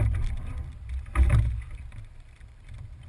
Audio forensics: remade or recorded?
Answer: remade